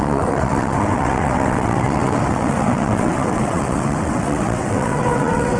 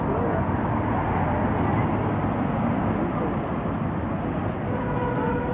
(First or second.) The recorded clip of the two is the second